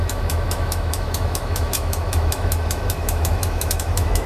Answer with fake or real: fake